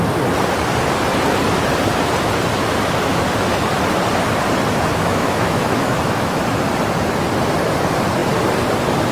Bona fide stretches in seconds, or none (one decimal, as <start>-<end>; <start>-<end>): 0.0-4.9; 6.4-9.1